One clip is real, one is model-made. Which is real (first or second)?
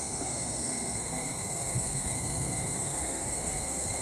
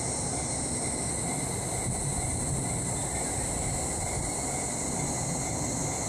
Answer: second